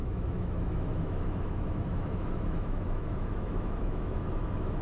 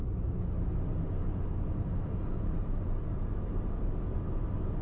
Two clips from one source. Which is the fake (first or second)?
first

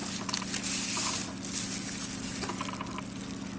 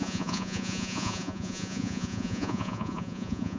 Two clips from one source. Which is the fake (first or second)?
second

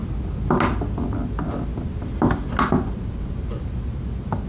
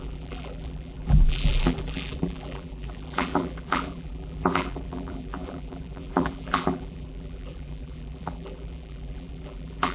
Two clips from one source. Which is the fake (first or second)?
second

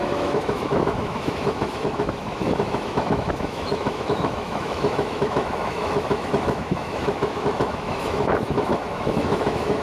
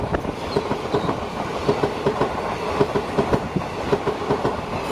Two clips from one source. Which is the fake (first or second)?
first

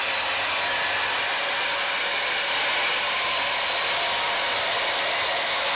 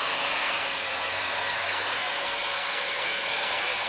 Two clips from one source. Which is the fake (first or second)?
second